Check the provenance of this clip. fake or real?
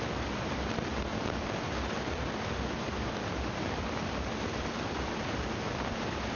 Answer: fake